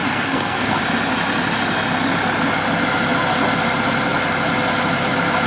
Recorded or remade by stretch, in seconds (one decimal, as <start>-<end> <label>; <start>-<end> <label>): 0.0-0.8 remade; 0.8-5.5 recorded